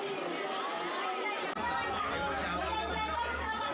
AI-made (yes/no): no